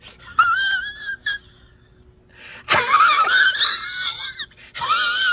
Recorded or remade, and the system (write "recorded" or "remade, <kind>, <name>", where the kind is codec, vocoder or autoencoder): recorded